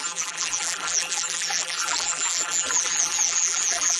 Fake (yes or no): yes